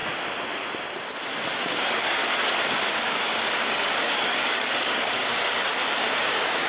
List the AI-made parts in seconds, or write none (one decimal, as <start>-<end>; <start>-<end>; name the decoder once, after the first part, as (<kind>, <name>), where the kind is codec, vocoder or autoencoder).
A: 1.6-2.2 (codec, DAC); 3.0-5.7; 6.2-6.7